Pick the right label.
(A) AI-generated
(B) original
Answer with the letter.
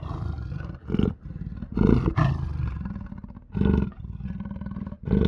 B